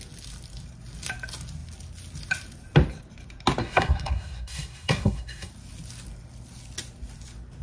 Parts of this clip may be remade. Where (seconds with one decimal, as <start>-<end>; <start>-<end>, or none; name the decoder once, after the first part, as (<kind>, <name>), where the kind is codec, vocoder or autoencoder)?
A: 3.6-5.5 (codec, SNAC)